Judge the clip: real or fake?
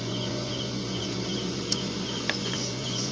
fake